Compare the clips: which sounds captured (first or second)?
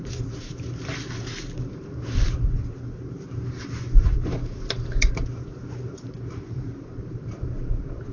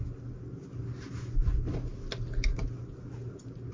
second